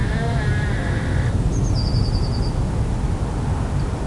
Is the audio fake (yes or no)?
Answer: no